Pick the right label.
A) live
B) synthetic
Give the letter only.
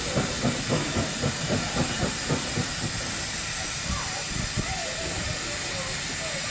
A